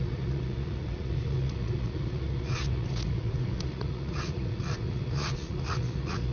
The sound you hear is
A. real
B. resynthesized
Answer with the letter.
B